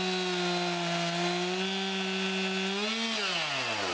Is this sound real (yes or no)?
yes